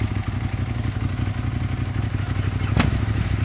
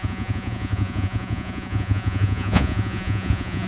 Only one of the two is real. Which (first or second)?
first